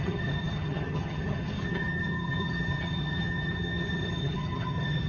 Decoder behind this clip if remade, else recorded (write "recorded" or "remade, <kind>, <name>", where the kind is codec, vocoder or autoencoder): remade, vocoder, HiFi-GAN